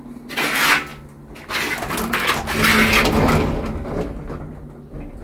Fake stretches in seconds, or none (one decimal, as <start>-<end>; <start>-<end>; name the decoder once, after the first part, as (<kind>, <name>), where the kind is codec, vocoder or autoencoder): none